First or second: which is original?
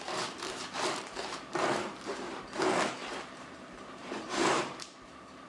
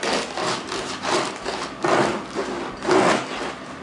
second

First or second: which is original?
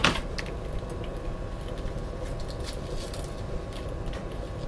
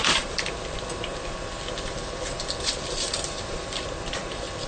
first